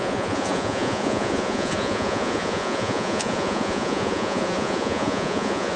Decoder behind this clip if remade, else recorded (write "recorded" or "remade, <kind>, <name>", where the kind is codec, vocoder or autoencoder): remade, vocoder, Vocos